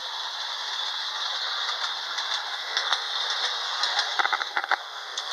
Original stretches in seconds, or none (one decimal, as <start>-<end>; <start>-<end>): 0.0-2.5; 3.1-4.4